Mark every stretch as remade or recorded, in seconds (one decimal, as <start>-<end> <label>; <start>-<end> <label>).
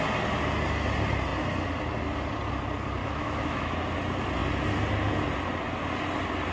0.0-3.0 recorded; 3.0-3.7 remade; 3.7-6.5 recorded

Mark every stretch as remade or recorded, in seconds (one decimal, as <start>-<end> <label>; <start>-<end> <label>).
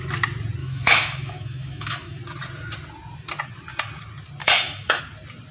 0.0-0.6 recorded; 0.6-2.2 remade; 2.2-4.4 recorded; 4.4-5.0 remade; 5.0-5.5 recorded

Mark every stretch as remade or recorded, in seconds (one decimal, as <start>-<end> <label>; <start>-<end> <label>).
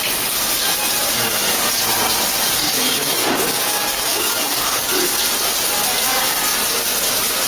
0.0-2.6 recorded; 2.6-4.9 remade; 4.9-7.5 recorded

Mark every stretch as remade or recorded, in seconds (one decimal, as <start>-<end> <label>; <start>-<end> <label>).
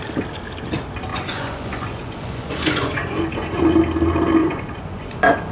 0.0-1.1 recorded; 1.1-3.6 remade; 3.6-4.4 recorded; 4.4-5.5 remade